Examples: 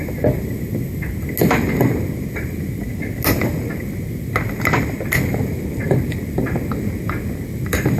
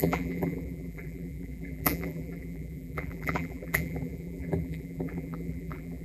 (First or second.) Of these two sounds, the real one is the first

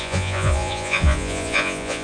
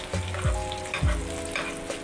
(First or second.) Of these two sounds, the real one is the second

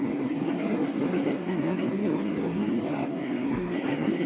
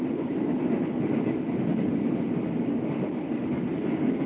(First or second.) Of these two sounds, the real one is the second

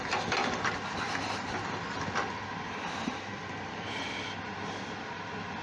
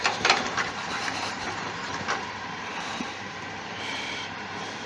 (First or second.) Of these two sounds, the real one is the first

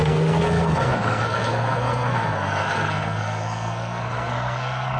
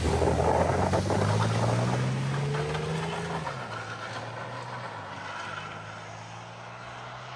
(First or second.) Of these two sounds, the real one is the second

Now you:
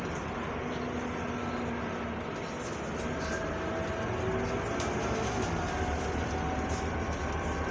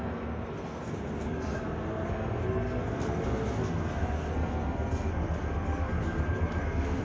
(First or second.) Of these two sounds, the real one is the first